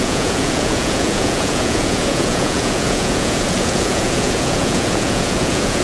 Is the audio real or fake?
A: fake